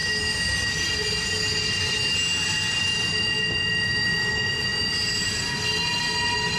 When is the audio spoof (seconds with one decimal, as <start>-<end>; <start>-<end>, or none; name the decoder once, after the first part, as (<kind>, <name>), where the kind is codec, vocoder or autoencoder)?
none